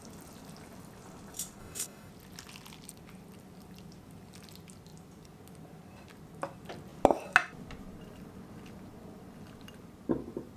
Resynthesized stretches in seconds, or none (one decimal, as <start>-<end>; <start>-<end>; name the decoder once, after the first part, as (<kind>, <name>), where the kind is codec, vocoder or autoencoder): 1.6-2.1 (codec, DAC)